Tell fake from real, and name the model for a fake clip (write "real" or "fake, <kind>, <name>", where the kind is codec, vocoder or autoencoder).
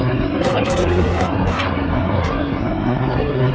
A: fake, codec, SNAC